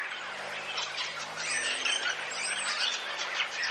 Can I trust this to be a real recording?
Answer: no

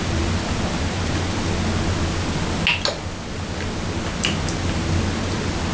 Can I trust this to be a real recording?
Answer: yes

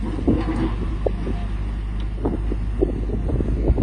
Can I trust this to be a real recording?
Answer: yes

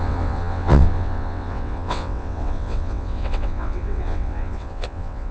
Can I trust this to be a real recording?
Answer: no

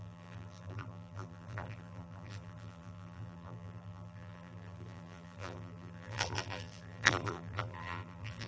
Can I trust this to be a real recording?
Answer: no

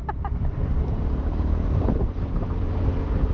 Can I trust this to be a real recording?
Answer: no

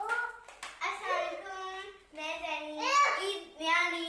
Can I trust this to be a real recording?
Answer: yes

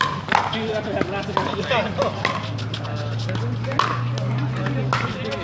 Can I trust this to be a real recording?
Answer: yes